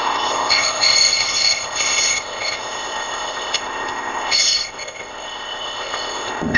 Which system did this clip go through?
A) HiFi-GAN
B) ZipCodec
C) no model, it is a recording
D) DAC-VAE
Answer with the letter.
B